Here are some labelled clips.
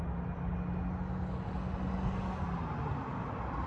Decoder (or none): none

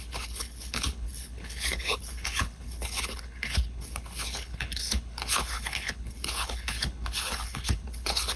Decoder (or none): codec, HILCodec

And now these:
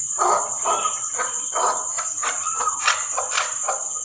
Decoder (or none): vocoder, BigVGAN v2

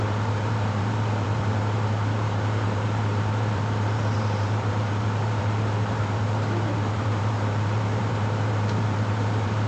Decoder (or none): vocoder, BigVGAN v2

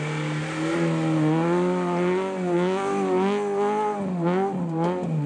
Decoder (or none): none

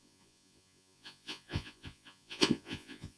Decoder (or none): vocoder, Vocos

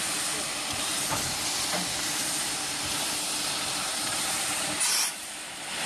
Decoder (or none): none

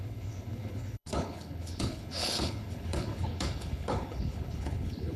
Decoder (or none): codec, HILCodec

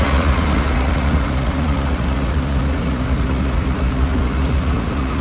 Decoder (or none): vocoder, Vocos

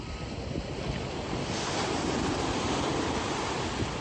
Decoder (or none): none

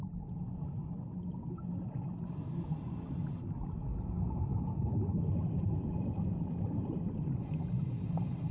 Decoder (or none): none